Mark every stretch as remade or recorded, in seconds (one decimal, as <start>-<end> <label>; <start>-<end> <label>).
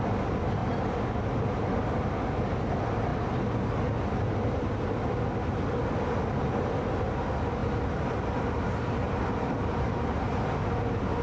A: 0.0-11.2 recorded